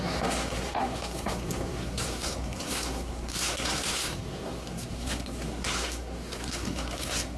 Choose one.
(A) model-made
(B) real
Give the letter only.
A